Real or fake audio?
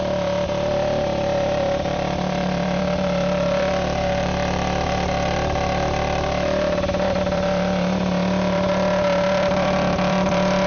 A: fake